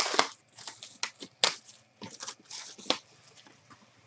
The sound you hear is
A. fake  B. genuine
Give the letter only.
B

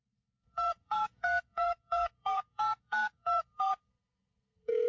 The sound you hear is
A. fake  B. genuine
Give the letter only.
A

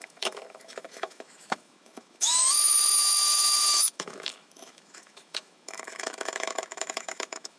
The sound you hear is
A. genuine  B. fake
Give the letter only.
B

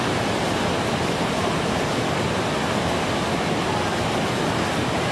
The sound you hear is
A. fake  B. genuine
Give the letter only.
B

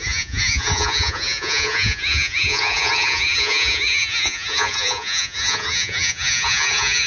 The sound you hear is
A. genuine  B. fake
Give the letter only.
B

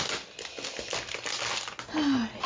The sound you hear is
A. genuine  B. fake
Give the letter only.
A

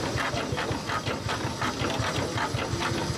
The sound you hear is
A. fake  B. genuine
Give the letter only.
B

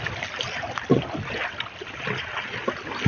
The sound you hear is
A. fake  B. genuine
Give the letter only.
B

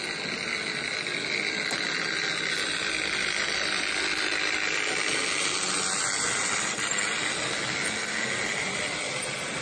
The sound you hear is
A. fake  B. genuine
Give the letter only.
B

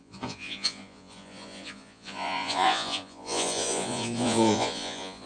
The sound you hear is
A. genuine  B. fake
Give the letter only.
B